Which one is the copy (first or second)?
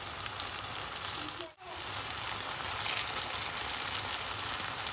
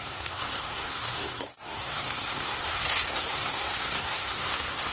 second